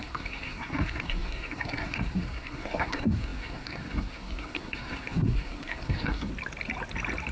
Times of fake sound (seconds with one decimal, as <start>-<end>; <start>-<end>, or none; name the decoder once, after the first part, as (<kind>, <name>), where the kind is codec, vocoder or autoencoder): 0.0-6.3 (codec, SNAC)